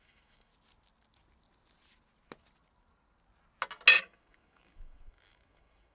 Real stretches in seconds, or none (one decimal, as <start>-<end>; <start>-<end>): 0.5-4.0